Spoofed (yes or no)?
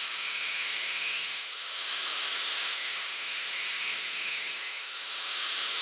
yes